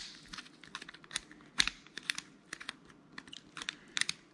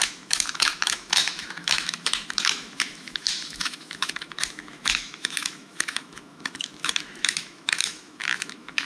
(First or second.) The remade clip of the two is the second